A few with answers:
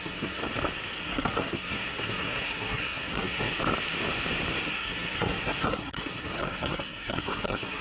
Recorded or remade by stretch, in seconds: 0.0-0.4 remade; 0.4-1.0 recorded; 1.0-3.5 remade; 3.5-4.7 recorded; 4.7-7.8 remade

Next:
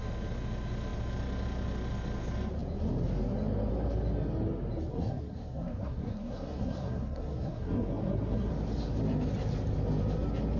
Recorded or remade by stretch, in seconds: 0.0-4.9 recorded; 4.9-8.5 remade; 8.5-10.6 recorded

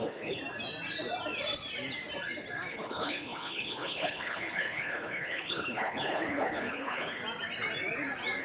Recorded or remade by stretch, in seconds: 0.0-0.4 remade; 0.4-2.7 recorded; 2.7-7.2 remade; 7.2-8.4 recorded

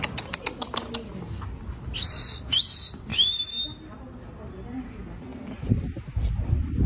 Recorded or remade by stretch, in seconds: 0.0-6.9 recorded

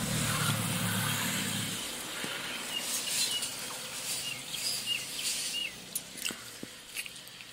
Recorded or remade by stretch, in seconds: 0.0-3.5 recorded; 3.5-4.4 remade; 4.4-7.5 recorded